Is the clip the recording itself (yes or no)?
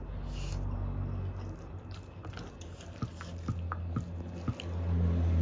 yes